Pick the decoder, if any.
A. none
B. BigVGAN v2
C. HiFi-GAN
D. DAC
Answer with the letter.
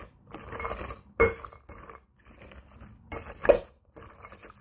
A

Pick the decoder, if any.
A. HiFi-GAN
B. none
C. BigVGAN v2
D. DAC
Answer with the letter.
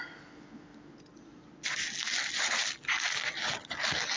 B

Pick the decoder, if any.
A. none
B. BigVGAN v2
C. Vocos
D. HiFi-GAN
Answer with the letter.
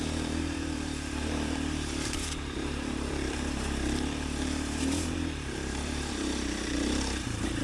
B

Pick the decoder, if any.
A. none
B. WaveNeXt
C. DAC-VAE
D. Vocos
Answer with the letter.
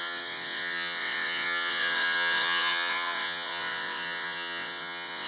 B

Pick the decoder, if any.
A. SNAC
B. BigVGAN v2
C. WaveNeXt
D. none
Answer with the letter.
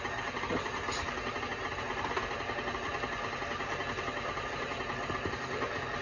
D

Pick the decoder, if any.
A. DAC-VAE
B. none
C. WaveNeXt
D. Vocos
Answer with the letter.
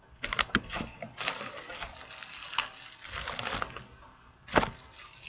B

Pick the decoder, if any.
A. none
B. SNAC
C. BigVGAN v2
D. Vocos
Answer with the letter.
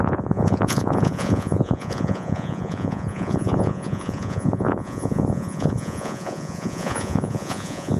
D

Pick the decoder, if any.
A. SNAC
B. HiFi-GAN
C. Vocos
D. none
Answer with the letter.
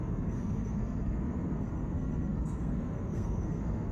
A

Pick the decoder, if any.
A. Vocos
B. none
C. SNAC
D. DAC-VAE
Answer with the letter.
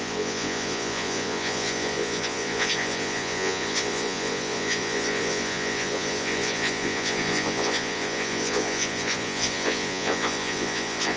A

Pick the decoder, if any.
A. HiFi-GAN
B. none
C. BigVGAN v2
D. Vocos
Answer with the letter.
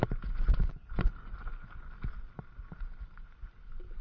B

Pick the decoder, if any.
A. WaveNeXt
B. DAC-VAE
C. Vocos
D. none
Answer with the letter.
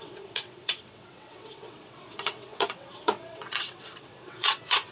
A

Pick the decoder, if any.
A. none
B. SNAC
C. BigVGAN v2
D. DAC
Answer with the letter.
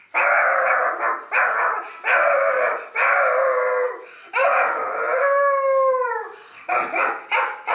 A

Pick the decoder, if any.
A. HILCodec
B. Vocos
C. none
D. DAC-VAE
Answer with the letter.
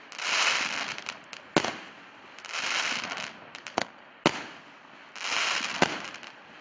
C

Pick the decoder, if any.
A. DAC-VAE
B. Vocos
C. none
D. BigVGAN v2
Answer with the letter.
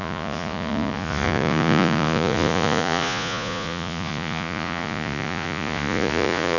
B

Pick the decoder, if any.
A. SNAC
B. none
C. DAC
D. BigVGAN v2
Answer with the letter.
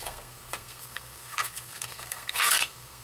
A